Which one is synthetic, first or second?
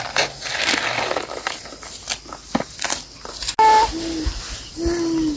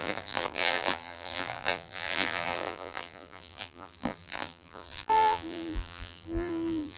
second